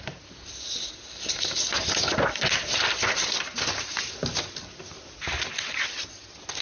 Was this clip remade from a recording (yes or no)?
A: no